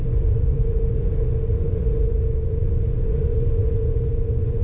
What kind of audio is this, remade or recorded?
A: remade